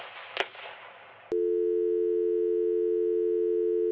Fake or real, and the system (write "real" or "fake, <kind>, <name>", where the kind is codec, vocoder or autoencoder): real